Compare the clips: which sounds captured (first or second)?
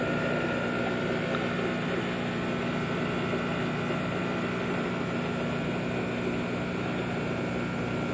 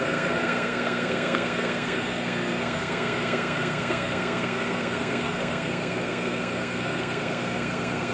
first